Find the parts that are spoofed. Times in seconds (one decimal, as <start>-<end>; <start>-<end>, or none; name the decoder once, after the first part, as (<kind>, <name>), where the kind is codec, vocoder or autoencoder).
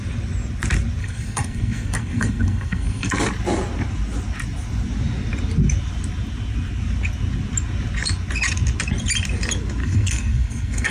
1.0-3.1 (codec, SNAC); 9.8-10.9